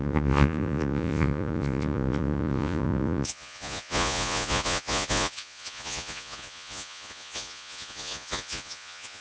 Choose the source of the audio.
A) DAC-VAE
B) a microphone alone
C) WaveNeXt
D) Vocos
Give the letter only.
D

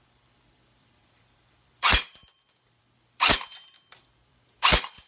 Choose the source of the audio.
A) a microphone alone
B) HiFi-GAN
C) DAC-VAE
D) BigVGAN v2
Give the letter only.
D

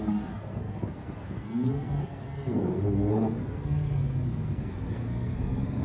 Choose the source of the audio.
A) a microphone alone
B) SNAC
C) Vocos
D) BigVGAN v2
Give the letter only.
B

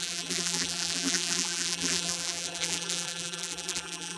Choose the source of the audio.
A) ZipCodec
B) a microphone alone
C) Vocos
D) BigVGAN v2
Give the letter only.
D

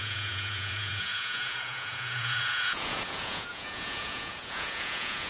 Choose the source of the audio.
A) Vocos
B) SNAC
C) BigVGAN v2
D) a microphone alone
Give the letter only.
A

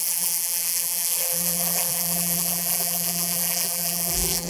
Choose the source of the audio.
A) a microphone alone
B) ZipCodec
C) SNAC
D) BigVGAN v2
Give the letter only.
D